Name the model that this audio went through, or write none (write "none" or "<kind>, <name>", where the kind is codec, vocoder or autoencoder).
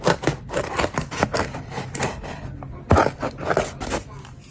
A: none